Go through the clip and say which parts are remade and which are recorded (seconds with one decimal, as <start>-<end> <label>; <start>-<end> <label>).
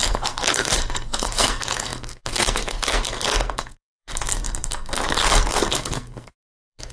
0.0-6.9 remade